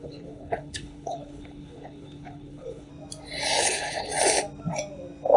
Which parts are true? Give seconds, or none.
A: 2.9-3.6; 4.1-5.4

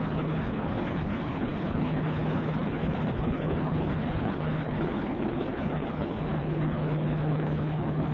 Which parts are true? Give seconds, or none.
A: none

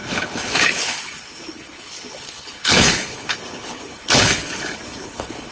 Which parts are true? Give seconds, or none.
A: none

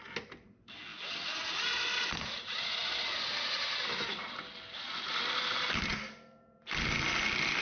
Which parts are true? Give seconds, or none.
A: 0.0-7.6

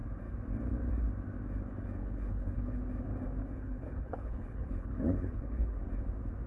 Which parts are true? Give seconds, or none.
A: 0.0-2.0; 2.8-3.4; 5.8-6.5